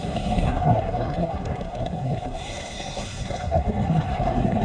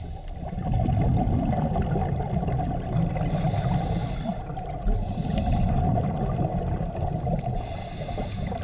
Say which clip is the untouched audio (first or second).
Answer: second